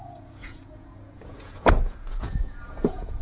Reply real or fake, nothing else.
fake